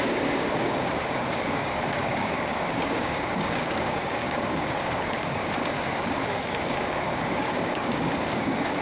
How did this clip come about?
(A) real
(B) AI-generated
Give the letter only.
B